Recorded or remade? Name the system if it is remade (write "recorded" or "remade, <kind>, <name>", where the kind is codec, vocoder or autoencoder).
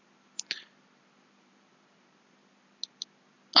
recorded